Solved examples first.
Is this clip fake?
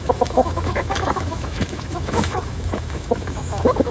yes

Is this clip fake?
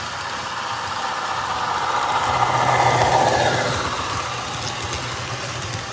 no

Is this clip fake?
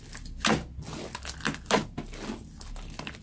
no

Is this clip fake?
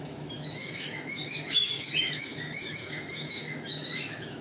yes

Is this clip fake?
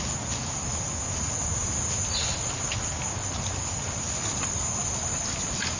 no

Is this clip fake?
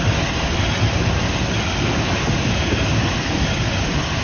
no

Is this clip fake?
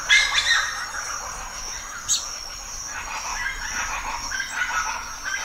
no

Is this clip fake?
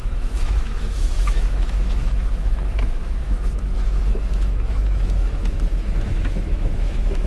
yes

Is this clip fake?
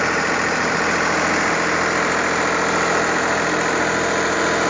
no